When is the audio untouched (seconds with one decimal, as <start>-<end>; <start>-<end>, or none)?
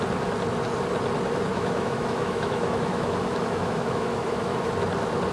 0.0-1.5; 4.7-5.3